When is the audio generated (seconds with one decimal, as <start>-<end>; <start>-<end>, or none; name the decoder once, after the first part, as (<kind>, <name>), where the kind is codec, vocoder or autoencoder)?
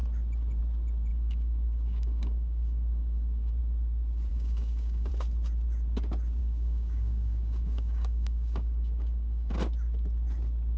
1.1-3.6 (codec, DAC); 4.3-5.1; 6.4-9.5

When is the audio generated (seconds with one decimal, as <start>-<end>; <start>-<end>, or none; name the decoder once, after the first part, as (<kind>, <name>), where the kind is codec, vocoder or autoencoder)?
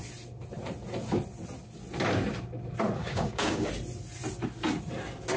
3.0-3.7 (codec, DAC)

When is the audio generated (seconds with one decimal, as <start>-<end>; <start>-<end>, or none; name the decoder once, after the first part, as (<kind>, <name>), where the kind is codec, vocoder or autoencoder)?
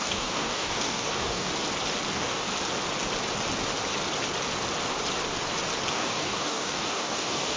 0.0-1.5 (codec, DAC); 2.1-2.5; 5.9-7.6